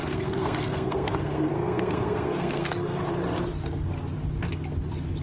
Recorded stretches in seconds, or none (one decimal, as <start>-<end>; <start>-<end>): 3.0-5.2